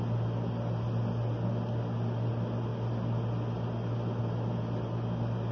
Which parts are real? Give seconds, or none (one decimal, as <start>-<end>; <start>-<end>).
0.0-5.5